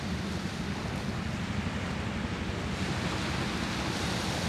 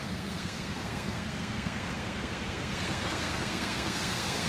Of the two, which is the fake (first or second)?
second